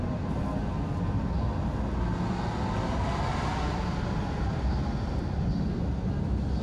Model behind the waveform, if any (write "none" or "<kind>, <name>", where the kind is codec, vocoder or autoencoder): none